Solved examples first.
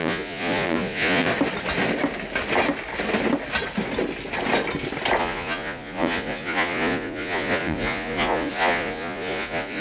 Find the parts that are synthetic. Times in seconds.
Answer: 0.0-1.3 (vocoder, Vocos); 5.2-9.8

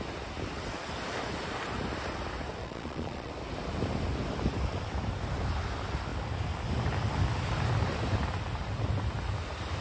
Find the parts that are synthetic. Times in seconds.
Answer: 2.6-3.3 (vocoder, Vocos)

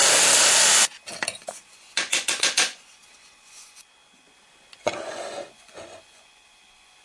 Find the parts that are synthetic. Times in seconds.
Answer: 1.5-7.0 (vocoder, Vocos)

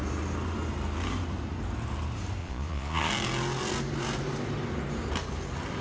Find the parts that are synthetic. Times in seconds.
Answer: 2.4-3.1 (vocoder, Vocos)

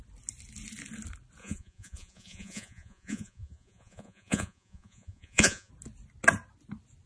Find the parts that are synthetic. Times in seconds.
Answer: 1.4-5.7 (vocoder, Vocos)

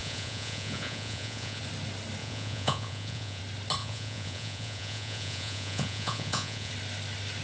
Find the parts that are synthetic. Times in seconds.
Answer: 0.0-1.6 (vocoder, Vocos); 2.2-3.4; 3.8-6.7